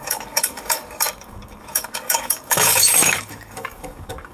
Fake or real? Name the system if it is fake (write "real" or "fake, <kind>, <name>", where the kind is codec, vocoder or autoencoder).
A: fake, codec, DAC